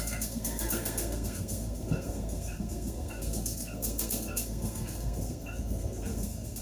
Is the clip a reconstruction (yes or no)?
yes